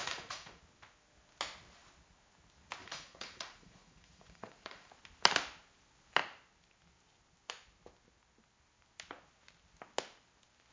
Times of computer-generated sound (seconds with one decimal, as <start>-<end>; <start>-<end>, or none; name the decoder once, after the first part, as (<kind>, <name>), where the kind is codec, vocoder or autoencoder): 0.0-0.6 (vocoder, Vocos); 2.8-4.9